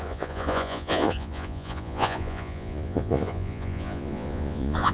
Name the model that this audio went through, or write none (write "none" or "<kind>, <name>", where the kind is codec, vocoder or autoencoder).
vocoder, Vocos